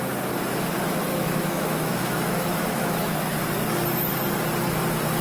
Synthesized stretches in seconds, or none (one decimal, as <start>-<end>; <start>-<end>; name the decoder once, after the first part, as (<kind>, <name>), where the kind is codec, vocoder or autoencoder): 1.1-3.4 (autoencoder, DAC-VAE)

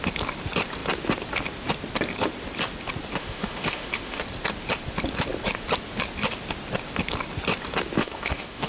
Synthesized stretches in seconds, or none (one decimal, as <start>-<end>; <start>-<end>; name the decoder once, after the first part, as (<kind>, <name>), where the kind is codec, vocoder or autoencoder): 3.2-4.2 (autoencoder, DAC-VAE); 8.0-8.7

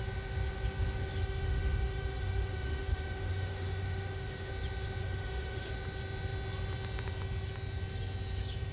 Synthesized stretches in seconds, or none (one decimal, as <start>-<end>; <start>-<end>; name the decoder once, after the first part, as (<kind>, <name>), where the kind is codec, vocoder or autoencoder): 1.2-4.5 (autoencoder, DAC-VAE); 5.0-5.7

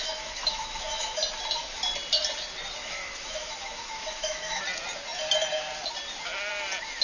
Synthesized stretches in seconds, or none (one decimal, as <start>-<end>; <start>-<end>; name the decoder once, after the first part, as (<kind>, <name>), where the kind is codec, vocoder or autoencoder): 0.0-1.2 (autoencoder, DAC-VAE); 2.8-4.6

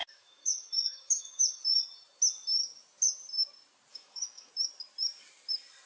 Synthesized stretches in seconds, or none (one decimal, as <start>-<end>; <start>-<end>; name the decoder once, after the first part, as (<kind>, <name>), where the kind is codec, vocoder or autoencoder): 0.0-1.6 (autoencoder, DAC-VAE); 3.9-4.5

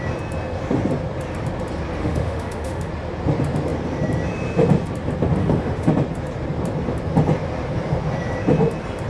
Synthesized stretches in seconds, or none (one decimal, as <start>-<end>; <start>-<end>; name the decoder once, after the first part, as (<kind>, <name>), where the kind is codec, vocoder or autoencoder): 2.0-2.9 (autoencoder, DAC-VAE); 5.4-5.9